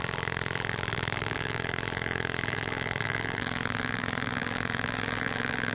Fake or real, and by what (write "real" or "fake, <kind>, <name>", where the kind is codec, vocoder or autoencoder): fake, vocoder, BigVGAN v2